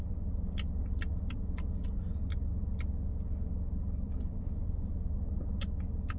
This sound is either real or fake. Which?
real